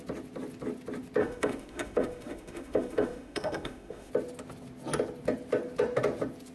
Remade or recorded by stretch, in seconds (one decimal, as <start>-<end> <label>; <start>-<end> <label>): 0.0-1.2 recorded; 1.2-4.1 remade; 4.1-6.5 recorded

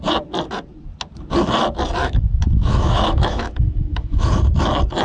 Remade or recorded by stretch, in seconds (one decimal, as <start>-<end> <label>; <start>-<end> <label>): 0.0-2.0 recorded; 2.0-4.3 remade; 4.3-5.0 recorded

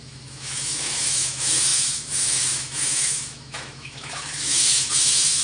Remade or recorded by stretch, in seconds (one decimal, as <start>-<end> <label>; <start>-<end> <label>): 0.0-5.4 remade